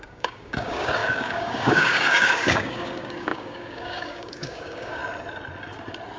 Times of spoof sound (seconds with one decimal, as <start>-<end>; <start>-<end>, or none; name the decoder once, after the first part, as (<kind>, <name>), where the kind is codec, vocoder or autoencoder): 0.0-5.0 (codec, DAC)